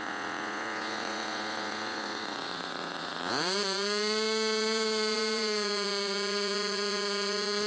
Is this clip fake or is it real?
fake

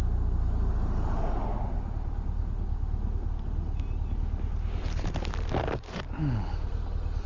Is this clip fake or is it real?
real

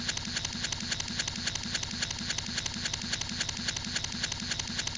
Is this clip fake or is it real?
real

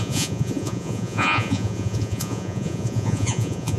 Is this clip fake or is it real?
fake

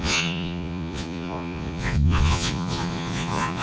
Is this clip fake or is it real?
fake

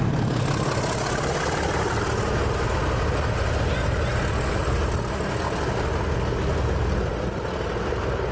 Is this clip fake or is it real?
real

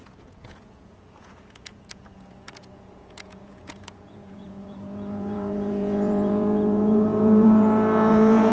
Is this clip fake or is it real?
fake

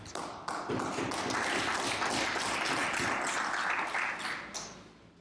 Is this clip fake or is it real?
real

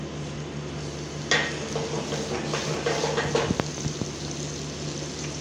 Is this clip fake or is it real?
real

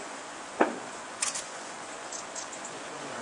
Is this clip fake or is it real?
fake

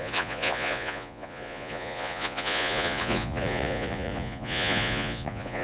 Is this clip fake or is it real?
fake